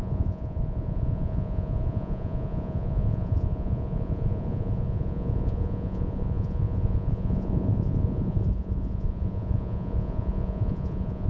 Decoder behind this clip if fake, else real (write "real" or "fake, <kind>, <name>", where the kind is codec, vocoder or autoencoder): fake, vocoder, Vocos